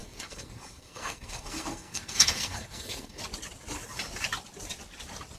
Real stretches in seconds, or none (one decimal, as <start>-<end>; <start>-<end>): 3.2-5.4